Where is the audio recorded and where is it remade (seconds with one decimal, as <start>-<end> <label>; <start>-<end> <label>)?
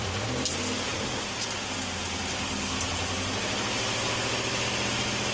0.0-5.3 recorded